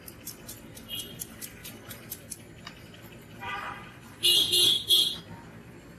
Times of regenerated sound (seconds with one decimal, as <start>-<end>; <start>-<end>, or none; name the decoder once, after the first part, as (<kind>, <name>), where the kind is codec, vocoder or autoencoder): 1.6-5.2 (vocoder, BigVGAN v2)

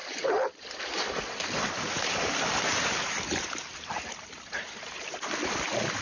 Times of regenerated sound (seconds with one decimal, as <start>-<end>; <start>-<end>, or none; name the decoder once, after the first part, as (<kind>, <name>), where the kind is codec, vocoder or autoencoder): 0.0-2.7 (vocoder, BigVGAN v2); 3.7-6.0

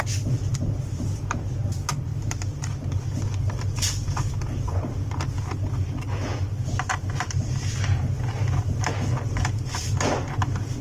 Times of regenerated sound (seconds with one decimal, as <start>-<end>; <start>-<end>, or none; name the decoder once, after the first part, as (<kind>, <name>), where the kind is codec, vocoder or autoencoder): 2.1-4.3 (vocoder, BigVGAN v2)

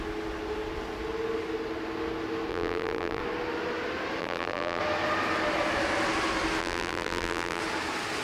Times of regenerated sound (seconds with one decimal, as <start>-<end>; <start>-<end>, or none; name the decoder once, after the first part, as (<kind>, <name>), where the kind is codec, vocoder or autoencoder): 2.5-3.2 (vocoder, BigVGAN v2); 4.2-4.8; 6.6-7.6